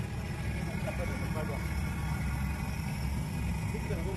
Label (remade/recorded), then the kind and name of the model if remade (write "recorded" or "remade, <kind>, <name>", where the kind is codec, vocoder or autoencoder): recorded